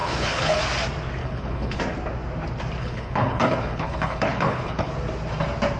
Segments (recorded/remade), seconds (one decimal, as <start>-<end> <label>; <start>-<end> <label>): 0.0-0.6 remade; 0.6-1.2 recorded; 1.2-1.8 remade; 1.8-2.8 recorded; 2.8-4.9 remade; 4.9-5.8 recorded